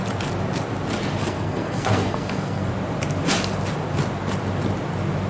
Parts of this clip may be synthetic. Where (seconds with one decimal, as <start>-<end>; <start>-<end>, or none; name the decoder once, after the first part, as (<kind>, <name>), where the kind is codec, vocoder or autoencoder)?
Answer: 1.2-2.7 (codec, SNAC)